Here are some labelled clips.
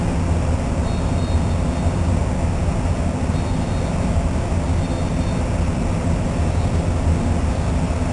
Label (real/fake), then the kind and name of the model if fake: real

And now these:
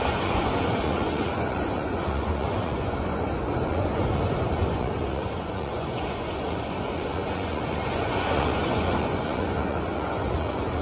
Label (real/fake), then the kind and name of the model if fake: fake, vocoder, Vocos